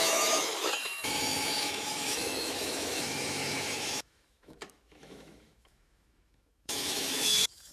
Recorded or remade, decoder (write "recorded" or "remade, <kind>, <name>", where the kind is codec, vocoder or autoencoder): remade, autoencoder, DAC-VAE